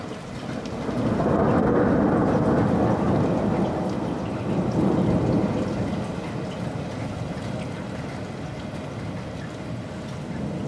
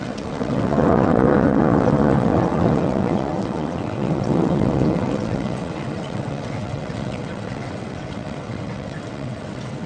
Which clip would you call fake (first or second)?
second